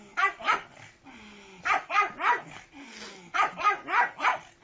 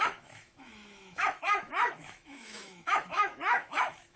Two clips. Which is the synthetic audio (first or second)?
second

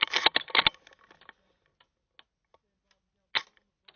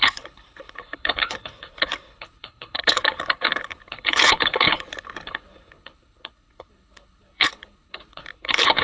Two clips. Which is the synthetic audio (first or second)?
second